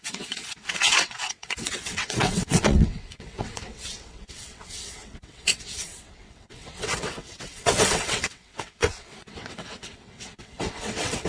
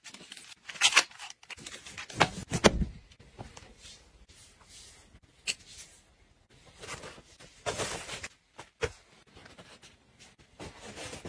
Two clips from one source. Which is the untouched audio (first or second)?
second